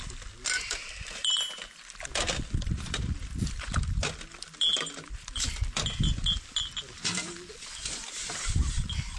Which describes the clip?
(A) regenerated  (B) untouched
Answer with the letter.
B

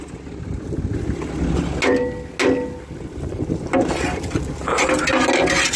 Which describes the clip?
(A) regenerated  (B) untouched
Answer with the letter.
B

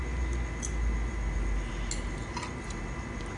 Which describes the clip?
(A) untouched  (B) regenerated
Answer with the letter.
A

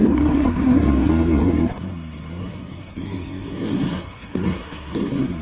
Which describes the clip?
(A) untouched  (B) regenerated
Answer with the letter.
B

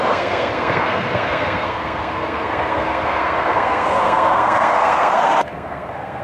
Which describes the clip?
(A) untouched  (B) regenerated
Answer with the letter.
B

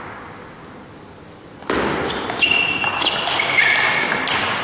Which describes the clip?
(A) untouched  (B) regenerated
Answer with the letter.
A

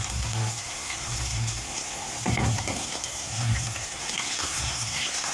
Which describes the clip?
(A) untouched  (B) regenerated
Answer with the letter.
B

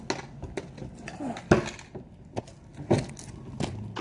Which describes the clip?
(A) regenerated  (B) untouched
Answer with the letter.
B